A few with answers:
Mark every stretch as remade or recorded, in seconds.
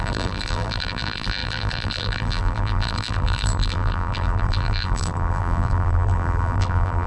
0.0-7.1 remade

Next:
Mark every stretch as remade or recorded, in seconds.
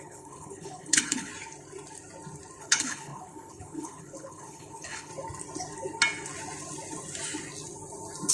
0.0-1.3 remade; 1.3-2.6 recorded; 2.6-5.1 remade; 5.1-8.3 recorded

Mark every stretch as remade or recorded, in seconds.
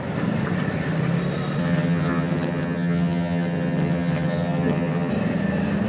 0.0-1.6 recorded; 1.6-5.1 remade; 5.1-5.9 recorded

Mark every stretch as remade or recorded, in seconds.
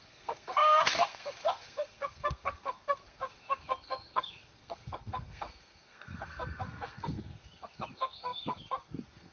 0.0-9.3 remade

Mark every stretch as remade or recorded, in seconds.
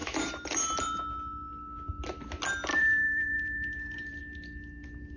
0.0-1.0 remade; 1.0-2.7 recorded; 2.7-4.2 remade; 4.2-5.2 recorded